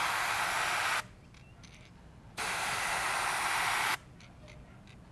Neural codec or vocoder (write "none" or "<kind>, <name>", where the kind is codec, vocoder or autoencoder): none